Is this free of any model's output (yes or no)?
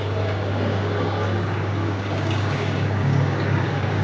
no